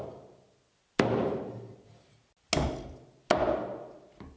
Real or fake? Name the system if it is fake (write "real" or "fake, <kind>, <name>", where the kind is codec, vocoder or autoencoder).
real